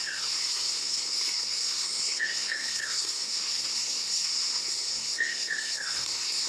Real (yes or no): no